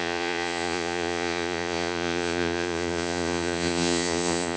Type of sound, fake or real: fake